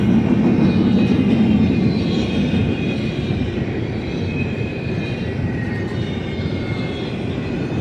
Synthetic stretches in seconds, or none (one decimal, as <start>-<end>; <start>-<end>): 2.6-5.0